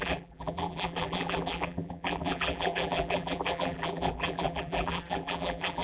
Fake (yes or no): yes